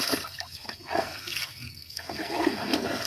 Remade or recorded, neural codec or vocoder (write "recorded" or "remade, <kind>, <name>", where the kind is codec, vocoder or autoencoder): remade, codec, SNAC